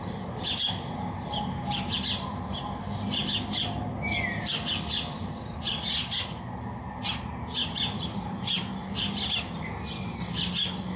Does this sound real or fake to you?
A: real